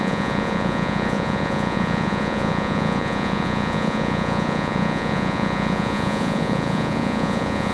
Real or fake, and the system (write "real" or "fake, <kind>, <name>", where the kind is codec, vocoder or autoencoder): fake, vocoder, Vocos